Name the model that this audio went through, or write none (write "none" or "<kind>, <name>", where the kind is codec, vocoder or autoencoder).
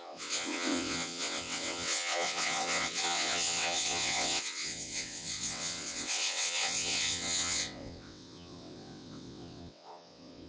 vocoder, WaveNeXt